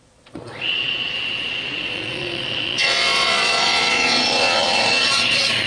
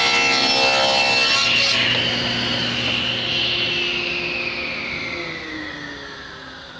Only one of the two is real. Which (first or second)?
second